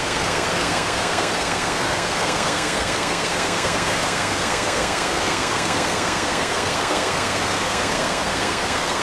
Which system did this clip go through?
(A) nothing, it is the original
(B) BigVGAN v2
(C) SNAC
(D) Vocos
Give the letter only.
C